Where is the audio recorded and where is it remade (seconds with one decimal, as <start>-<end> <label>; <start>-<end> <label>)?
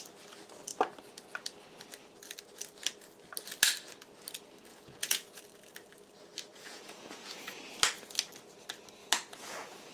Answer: 0.0-4.7 recorded; 4.7-5.4 remade; 5.4-6.5 recorded; 6.5-7.6 remade; 7.6-9.0 recorded; 9.0-9.9 remade